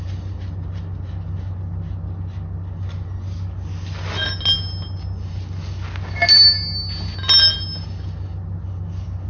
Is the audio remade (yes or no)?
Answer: no